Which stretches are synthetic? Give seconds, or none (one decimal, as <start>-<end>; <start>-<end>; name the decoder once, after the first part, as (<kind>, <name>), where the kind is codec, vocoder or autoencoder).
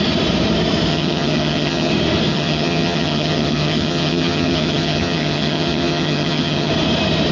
0.9-1.9 (vocoder, HiFi-GAN); 2.3-6.7